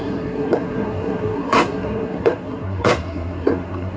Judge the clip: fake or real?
fake